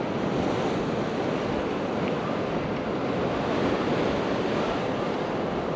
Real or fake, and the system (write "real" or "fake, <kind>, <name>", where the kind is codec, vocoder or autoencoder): real